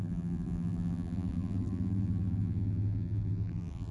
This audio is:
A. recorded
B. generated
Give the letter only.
B